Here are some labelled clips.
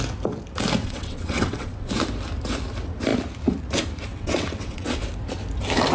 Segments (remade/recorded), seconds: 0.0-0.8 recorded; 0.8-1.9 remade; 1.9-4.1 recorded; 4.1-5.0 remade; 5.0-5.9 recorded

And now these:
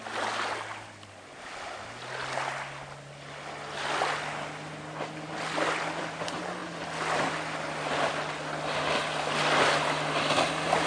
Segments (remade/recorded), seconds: 0.0-10.9 recorded

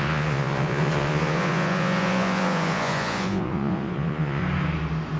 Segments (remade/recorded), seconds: 0.0-4.4 remade; 4.4-5.2 recorded

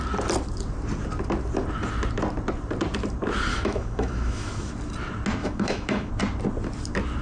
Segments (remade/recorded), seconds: 0.0-3.5 recorded; 3.5-4.7 remade; 4.7-5.4 recorded; 5.4-6.1 remade; 6.1-7.2 recorded

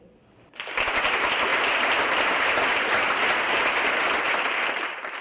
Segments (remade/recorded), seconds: 0.0-1.5 recorded; 1.5-4.0 remade; 4.0-5.2 recorded

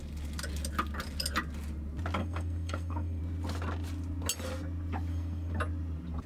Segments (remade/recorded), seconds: 0.0-2.2 recorded; 2.2-3.2 remade; 3.2-5.1 recorded; 5.1-5.6 remade; 5.6-6.3 recorded

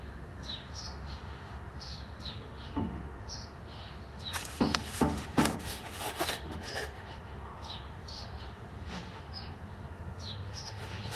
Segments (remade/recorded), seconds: 0.0-11.2 remade